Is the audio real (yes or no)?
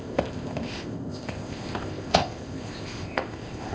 no